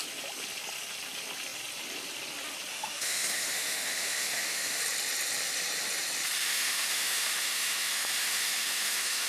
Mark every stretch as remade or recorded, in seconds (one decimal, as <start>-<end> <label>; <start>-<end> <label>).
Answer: 0.0-2.7 recorded; 2.7-4.8 remade; 4.8-6.4 recorded; 6.4-9.3 remade